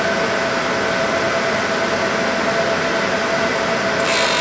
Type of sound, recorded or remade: recorded